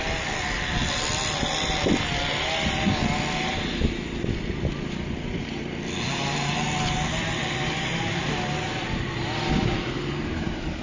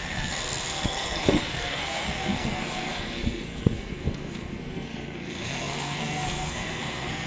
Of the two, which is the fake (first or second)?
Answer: second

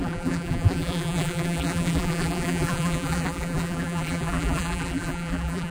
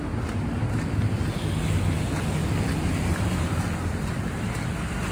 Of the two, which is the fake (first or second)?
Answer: first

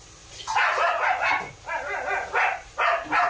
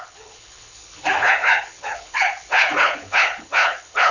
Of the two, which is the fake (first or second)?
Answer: second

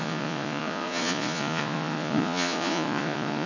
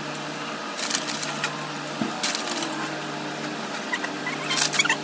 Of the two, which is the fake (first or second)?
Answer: first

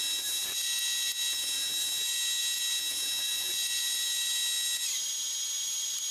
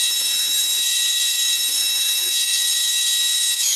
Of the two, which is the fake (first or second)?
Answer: second